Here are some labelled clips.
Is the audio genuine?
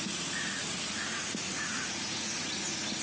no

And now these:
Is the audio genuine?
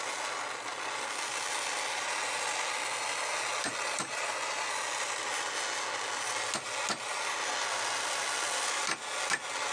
yes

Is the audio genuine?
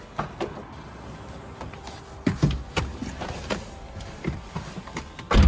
yes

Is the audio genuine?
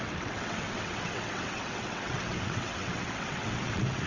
no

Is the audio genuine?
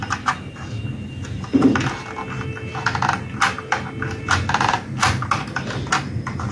yes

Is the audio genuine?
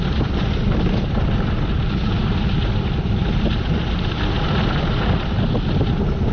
yes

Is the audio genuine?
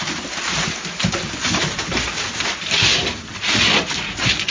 yes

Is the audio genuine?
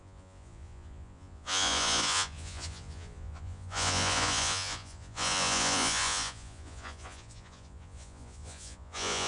no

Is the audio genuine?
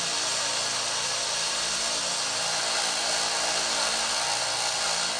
yes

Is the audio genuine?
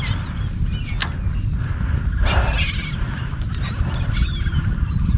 yes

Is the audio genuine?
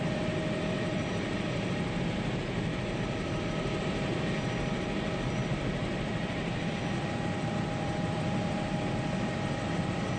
no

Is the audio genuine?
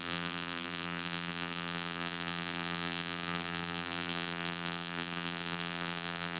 no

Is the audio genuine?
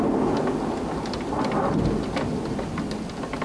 yes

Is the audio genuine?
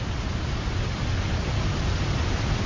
yes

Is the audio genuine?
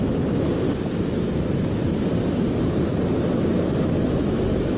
yes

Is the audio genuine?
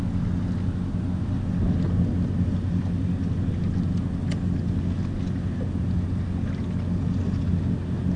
yes